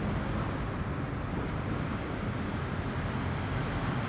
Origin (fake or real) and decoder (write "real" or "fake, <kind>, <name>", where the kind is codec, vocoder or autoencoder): real